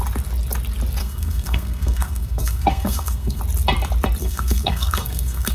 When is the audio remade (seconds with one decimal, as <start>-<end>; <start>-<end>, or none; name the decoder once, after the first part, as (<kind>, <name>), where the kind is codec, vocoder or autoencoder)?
1.0-3.4 (codec, SNAC); 4.2-5.5